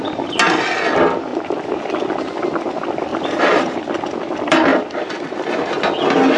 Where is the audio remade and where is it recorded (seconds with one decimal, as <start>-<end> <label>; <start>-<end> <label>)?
0.0-3.1 recorded; 3.1-3.8 remade; 3.8-6.4 recorded